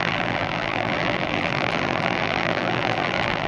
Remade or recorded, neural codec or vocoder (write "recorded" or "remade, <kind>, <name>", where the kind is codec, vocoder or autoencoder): remade, vocoder, BigVGAN v2